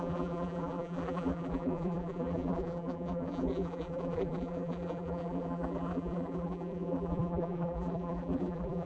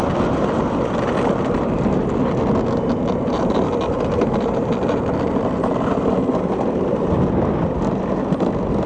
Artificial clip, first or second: first